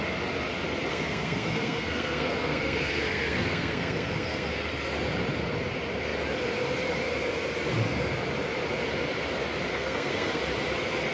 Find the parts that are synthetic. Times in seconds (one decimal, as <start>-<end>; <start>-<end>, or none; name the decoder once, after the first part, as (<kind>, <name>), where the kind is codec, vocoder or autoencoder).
0.9-4.7 (codec, SNAC); 9.7-10.4